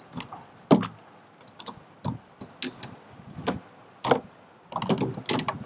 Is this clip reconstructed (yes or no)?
no